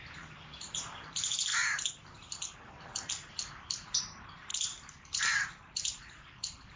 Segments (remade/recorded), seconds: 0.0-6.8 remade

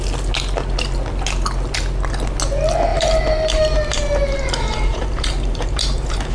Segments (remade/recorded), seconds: 0.0-2.9 recorded; 2.9-6.3 remade

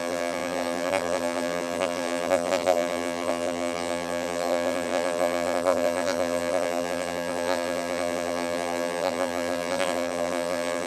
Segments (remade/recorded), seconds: 0.0-10.9 remade

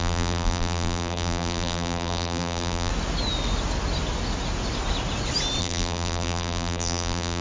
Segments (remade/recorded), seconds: 0.0-2.9 remade; 2.9-5.6 recorded; 5.6-7.4 remade

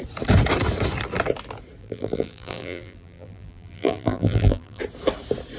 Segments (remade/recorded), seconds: 0.0-1.8 recorded; 1.8-4.8 remade; 4.8-5.6 recorded

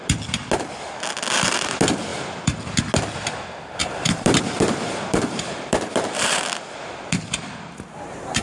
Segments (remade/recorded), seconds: 0.0-3.8 recorded; 3.8-6.4 remade; 6.4-8.4 recorded

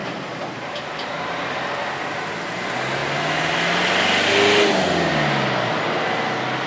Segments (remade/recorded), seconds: 0.0-1.4 remade; 1.4-6.7 recorded

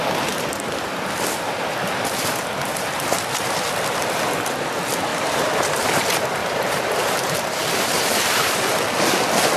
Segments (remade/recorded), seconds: 0.0-5.1 recorded; 5.1-6.0 remade; 6.0-6.4 recorded; 6.4-8.8 remade; 8.8-9.6 recorded